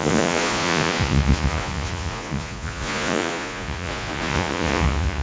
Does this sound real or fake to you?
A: fake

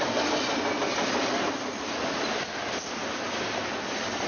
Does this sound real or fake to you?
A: real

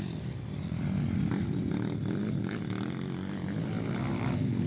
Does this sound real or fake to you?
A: real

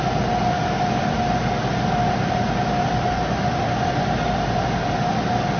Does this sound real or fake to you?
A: real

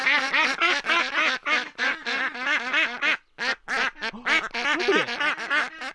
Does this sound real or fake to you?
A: real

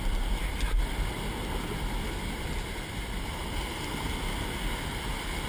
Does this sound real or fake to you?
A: real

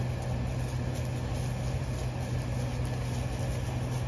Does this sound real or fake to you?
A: real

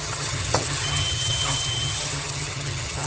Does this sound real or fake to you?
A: fake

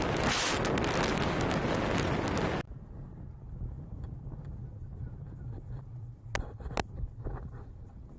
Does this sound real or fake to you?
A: real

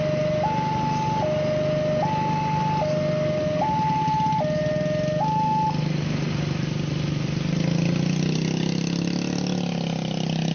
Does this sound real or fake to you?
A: real